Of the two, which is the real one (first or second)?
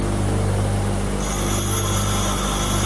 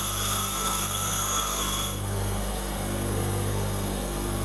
first